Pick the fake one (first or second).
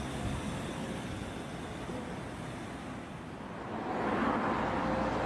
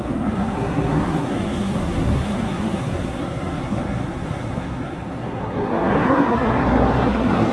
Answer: second